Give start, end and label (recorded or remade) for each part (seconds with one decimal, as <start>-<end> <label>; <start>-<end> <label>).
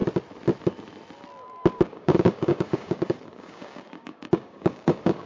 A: 0.0-1.7 recorded; 1.7-5.3 remade